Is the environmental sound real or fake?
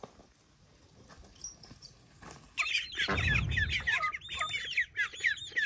real